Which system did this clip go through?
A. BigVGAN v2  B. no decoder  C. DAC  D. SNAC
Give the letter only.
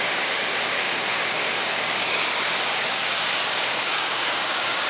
C